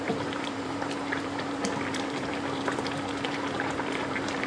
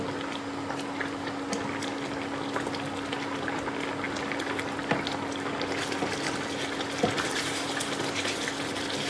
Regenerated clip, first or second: first